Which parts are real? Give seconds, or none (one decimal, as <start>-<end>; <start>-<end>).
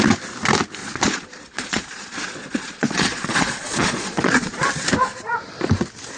0.0-0.8; 4.5-6.2